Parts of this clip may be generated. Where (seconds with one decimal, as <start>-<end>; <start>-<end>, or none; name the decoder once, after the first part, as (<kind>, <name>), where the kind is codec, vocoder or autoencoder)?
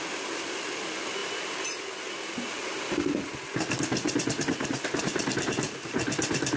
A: none